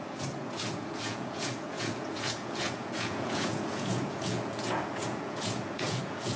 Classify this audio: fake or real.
fake